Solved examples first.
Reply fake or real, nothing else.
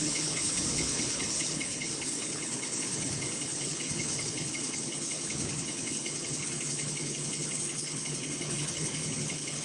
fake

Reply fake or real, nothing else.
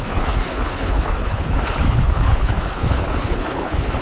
fake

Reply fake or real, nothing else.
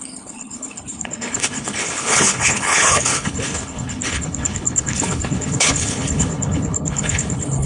fake